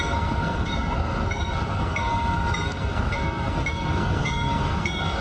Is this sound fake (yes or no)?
yes